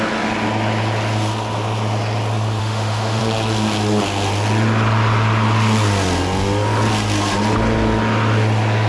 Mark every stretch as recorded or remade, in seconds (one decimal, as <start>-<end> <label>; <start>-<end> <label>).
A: 0.0-2.6 recorded; 2.6-3.2 remade; 3.2-8.9 recorded